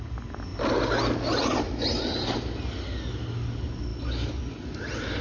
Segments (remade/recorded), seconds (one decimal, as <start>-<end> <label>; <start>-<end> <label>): 0.0-5.2 recorded